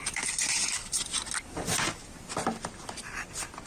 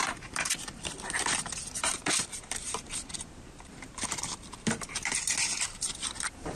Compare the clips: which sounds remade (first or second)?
second